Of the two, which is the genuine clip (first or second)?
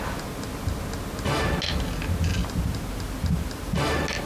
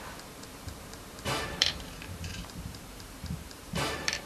first